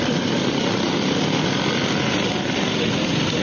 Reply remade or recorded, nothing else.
recorded